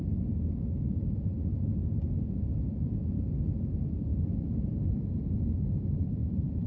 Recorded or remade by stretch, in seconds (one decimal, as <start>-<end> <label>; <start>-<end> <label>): 0.0-4.1 recorded; 4.1-4.9 remade; 4.9-6.2 recorded; 6.2-6.7 remade